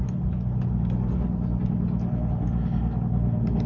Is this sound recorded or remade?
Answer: recorded